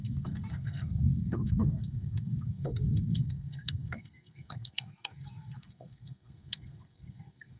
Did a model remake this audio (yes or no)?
yes